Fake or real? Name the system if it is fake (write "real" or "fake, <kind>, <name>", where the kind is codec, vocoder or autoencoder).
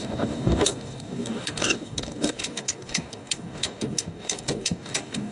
fake, codec, DAC